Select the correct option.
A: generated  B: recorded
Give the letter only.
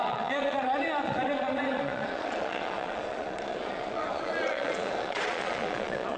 A